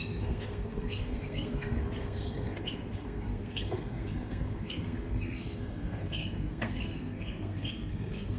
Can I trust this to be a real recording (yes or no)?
no